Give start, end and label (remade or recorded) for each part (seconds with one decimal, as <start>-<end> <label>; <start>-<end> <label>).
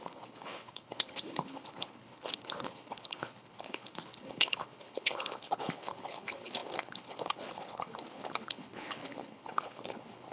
0.0-10.3 remade